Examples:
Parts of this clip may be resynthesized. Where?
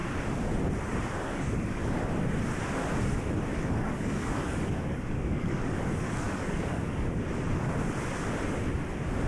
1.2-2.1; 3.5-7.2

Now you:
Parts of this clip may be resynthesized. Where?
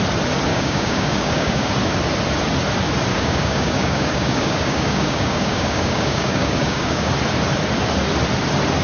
0.5-1.7; 3.1-7.1